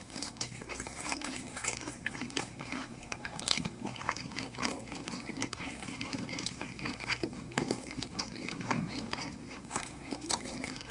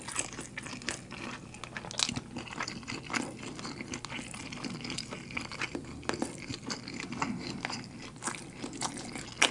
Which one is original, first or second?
second